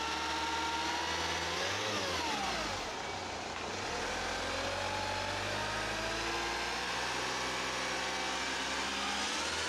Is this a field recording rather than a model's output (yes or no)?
yes